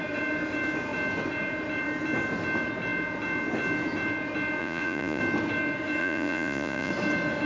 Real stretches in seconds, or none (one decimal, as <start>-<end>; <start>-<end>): 0.0-4.6; 5.2-6.0; 6.9-7.5